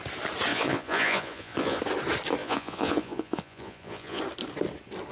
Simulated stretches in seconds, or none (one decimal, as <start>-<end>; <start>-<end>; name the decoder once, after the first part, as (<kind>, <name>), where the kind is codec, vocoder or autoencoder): 0.5-1.8 (vocoder, Vocos); 2.4-4.2